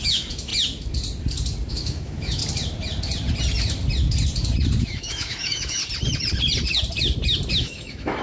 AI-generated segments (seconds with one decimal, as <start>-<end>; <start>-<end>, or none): 0.0-0.5; 1.7-2.4; 4.8-5.8; 7.5-8.2